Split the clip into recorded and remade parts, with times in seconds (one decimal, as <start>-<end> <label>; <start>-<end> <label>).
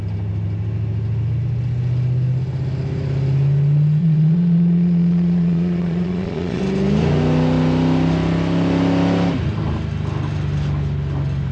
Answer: 0.0-4.0 recorded; 4.0-6.6 remade; 6.6-11.5 recorded